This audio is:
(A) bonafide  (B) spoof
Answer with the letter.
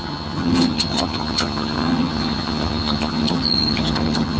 B